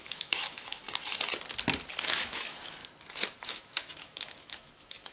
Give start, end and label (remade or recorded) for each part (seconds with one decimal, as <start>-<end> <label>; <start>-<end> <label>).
0.0-0.8 remade; 0.8-1.9 recorded; 1.9-2.8 remade; 2.8-3.4 recorded; 3.4-5.1 remade